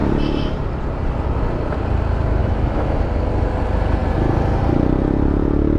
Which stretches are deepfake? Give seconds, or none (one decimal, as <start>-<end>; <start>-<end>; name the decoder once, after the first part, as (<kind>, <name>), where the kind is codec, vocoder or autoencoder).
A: 2.4-3.0 (autoencoder, DAC-VAE)